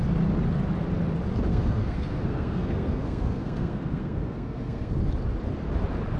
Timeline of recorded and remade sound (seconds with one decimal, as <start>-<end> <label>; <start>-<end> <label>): 0.0-1.5 recorded; 1.5-4.9 remade; 4.9-6.2 recorded